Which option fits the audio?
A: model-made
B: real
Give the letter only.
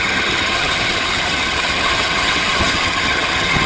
A